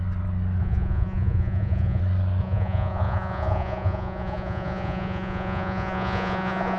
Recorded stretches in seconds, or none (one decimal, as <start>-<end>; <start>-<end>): 0.0-0.6; 2.0-2.4